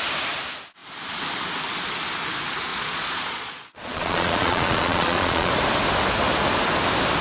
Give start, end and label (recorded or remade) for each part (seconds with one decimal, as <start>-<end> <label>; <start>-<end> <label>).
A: 0.0-2.7 recorded; 2.7-5.5 remade; 5.5-7.2 recorded